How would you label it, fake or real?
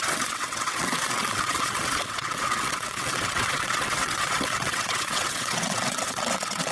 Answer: fake